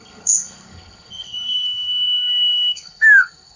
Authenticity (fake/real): fake